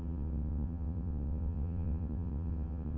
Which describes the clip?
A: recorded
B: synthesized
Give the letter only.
B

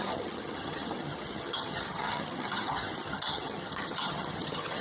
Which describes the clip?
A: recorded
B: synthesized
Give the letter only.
B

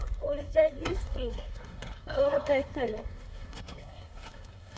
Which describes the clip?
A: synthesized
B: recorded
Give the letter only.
A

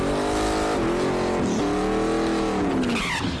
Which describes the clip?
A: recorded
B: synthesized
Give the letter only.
A